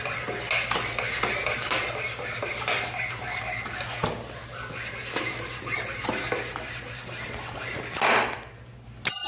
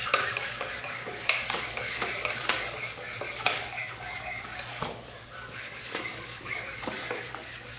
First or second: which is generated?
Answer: second